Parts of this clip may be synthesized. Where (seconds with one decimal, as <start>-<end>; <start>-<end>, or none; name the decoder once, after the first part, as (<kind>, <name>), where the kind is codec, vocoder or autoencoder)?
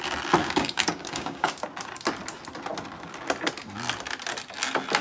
0.4-1.5 (codec, DAC)